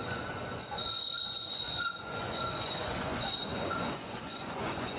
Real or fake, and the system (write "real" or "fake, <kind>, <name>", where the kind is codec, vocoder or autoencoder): fake, vocoder, Vocos